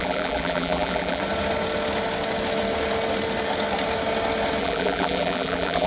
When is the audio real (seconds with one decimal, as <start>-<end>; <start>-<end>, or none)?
1.2-4.6

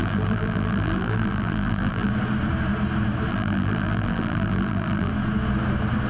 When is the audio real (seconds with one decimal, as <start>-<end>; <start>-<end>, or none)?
2.1-3.3; 5.1-6.1

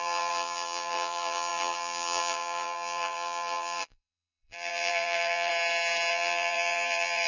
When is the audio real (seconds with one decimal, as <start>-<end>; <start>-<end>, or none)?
5.5-6.1

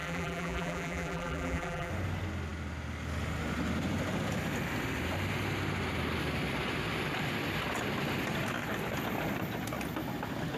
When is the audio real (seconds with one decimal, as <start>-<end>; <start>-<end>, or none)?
1.9-10.6